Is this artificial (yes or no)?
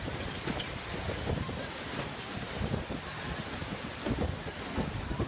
no